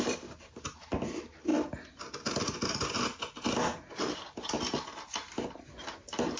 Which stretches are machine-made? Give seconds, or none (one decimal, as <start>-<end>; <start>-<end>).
none